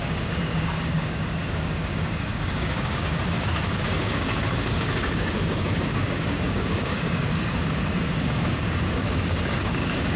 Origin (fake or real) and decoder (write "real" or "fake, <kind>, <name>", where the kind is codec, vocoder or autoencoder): fake, codec, DAC